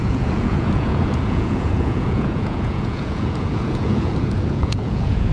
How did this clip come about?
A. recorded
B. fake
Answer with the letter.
B